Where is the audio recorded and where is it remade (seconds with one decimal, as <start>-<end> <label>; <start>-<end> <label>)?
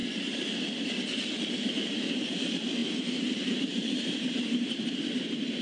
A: 0.0-1.4 recorded; 1.4-5.6 remade